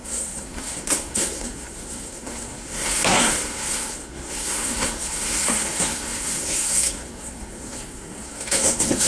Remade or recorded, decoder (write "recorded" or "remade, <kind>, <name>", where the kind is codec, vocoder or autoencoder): remade, codec, SNAC